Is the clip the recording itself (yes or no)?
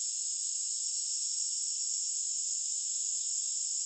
yes